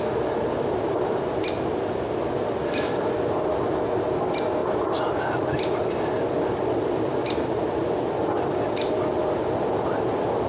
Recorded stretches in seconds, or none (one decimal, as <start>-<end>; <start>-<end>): 0.0-4.6; 5.9-10.5